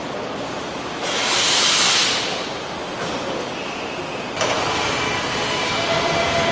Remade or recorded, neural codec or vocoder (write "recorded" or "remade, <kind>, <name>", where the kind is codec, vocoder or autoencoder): recorded